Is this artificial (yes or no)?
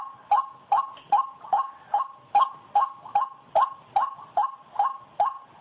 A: no